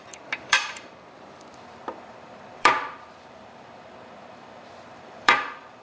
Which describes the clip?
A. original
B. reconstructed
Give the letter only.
B